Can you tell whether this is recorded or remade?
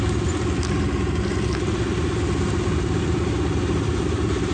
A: recorded